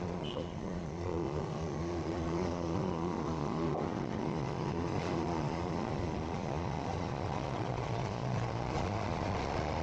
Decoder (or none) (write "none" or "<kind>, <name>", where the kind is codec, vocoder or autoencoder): vocoder, Vocos